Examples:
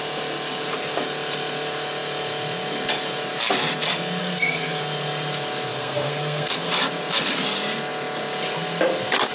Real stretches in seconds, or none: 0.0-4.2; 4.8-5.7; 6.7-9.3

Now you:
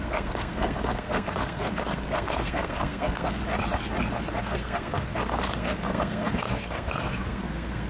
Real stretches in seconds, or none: 3.4-4.4

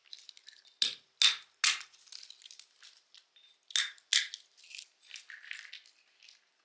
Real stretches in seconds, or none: 0.0-6.6

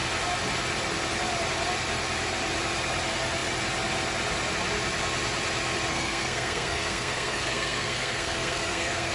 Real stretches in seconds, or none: 0.0-5.9

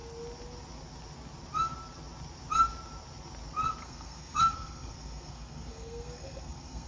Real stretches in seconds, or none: 0.0-3.8

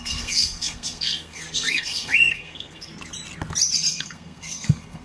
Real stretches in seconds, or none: 2.9-3.9

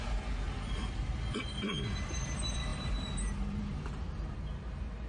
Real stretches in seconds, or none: 0.0-5.1

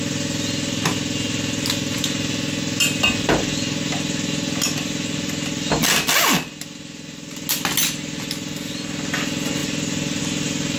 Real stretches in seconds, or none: 0.0-10.8